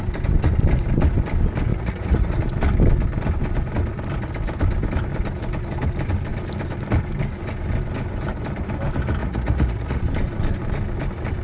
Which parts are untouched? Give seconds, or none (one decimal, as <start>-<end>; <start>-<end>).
0.0-1.7; 2.4-9.2; 10.0-11.4